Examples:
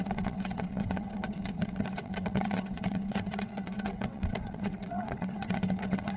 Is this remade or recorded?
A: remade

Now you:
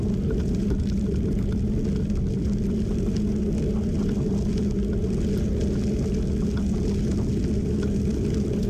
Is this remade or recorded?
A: recorded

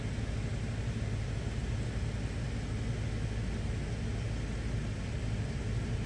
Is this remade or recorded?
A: recorded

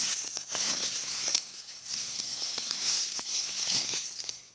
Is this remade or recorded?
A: remade